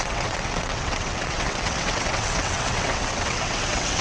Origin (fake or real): fake